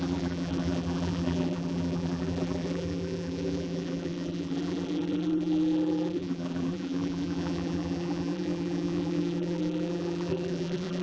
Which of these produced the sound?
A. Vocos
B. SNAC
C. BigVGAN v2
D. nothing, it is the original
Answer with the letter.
C